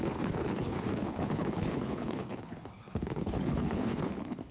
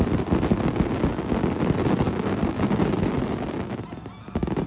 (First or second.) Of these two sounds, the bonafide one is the second